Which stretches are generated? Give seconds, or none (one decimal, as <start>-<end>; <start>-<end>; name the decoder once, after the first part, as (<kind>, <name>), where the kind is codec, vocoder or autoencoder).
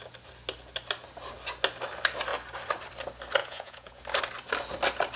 3.4-4.0 (vocoder, Vocos)